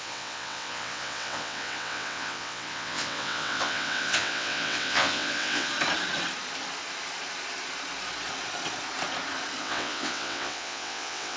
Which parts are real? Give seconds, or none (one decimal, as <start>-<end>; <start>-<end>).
5.7-9.6